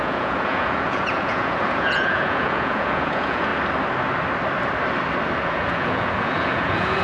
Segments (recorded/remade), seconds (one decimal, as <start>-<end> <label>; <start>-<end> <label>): 0.0-3.5 remade; 3.5-5.5 recorded; 5.5-7.0 remade